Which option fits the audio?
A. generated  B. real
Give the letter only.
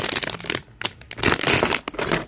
B